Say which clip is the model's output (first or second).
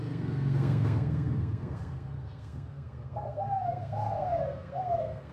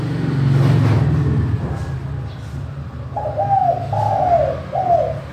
first